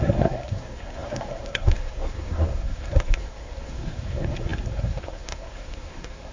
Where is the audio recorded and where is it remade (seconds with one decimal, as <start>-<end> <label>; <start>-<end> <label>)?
0.0-6.3 remade